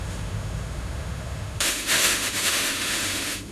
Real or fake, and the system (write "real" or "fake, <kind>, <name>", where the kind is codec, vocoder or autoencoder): fake, autoencoder, DAC-VAE